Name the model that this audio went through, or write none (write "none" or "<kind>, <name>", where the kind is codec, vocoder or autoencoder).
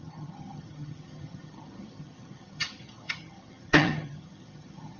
vocoder, HiFi-GAN